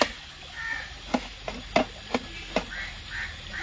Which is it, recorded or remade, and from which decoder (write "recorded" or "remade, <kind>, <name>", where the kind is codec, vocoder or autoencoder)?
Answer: recorded